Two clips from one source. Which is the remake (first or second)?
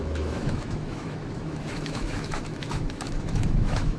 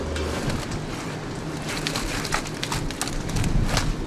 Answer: first